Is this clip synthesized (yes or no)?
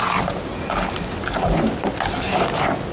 no